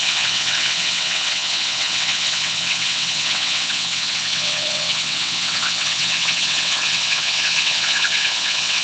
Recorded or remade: remade